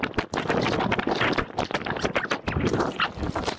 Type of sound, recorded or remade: recorded